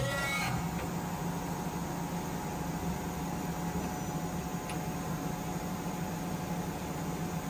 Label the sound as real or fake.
real